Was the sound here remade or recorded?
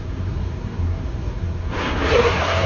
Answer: remade